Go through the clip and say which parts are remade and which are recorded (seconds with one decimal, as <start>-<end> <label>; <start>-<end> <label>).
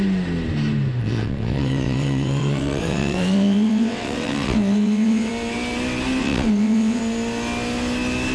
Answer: 0.0-1.0 recorded; 1.0-5.3 remade; 5.3-6.2 recorded; 6.2-7.0 remade; 7.0-8.3 recorded